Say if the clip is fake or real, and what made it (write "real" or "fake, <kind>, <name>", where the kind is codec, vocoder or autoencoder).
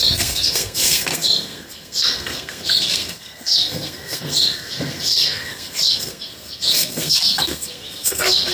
fake, codec, SNAC